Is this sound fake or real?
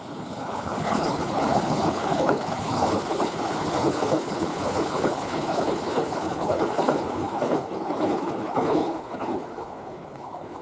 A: fake